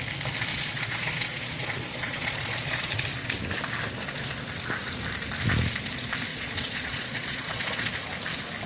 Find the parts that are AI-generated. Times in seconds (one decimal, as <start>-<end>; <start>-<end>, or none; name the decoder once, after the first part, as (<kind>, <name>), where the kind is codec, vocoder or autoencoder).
0.5-2.9 (vocoder, Vocos); 6.3-7.9